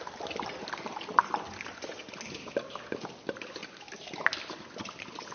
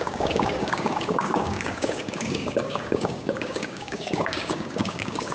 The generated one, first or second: second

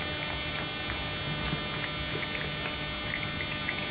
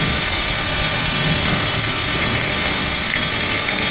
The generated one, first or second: second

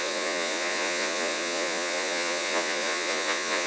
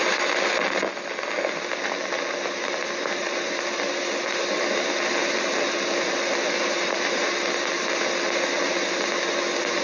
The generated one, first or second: first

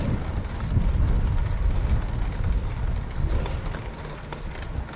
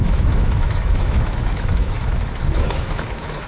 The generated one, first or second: second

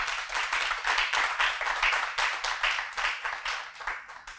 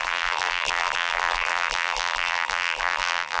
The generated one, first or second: second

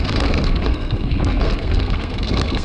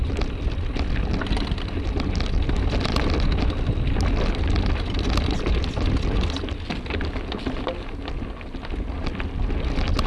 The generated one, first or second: first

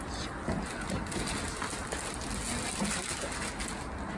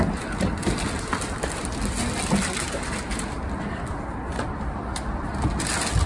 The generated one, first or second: second